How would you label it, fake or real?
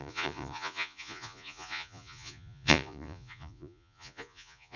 fake